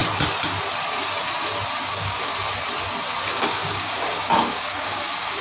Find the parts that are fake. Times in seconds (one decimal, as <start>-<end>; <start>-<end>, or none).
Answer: 1.9-2.3; 3.2-5.4